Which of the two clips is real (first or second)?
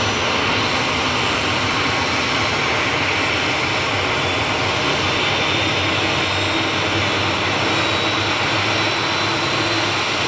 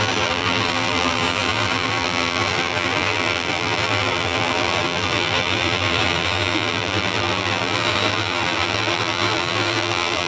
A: first